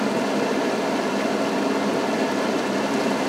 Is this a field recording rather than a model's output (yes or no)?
yes